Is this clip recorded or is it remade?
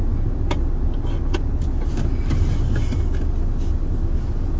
recorded